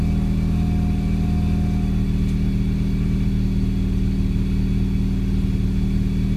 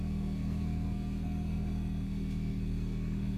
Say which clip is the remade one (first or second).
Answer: second